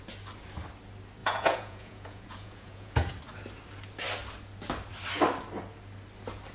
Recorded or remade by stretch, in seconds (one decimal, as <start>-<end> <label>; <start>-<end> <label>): 0.0-1.2 recorded; 1.2-3.1 remade; 3.1-6.5 recorded